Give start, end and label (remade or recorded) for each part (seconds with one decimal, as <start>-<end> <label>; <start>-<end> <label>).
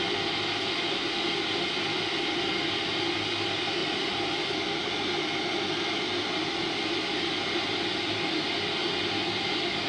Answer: 0.0-3.8 recorded; 3.8-4.3 remade; 4.3-9.9 recorded